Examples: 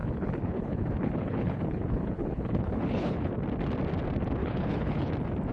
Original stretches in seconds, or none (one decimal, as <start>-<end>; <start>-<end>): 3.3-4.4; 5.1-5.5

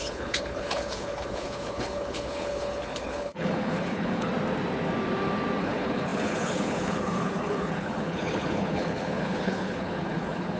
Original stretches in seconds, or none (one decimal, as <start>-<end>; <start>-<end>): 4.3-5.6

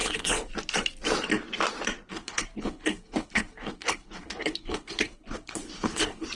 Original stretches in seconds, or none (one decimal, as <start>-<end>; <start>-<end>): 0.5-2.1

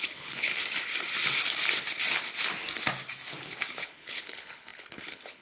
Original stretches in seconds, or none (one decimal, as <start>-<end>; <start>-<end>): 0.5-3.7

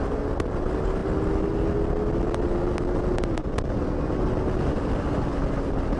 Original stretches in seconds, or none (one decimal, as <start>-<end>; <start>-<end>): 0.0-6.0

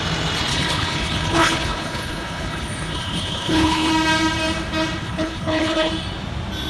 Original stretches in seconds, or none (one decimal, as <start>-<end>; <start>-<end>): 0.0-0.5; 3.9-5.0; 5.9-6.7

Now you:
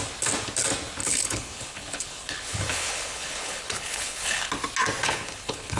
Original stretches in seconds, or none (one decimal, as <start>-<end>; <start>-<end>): 0.0-1.0; 4.5-5.0

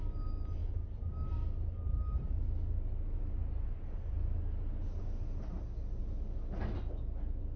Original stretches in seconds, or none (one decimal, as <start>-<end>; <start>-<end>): 0.0-7.6